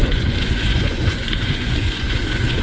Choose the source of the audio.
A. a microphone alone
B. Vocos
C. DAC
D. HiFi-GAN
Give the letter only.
B